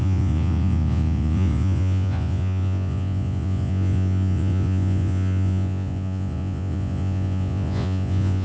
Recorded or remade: remade